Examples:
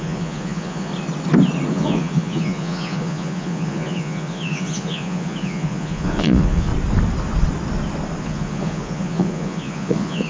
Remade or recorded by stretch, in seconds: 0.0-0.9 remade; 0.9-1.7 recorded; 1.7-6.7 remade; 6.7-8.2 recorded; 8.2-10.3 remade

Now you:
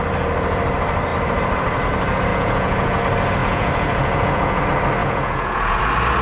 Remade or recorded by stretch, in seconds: 0.0-2.3 recorded; 2.3-3.0 remade; 3.0-3.4 recorded; 3.4-4.6 remade; 4.6-5.0 recorded; 5.0-5.8 remade; 5.8-6.2 recorded

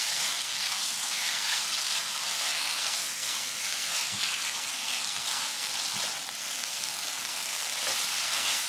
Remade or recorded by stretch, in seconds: 0.0-5.7 remade; 5.7-6.4 recorded; 6.4-7.7 remade; 7.7-8.2 recorded; 8.2-8.7 remade

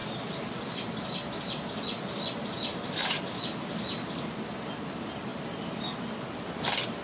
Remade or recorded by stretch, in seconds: 0.0-0.7 remade; 0.7-2.7 recorded; 2.7-3.4 remade; 3.4-7.0 recorded

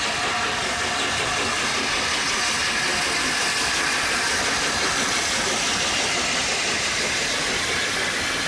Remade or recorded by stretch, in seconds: 0.0-8.5 recorded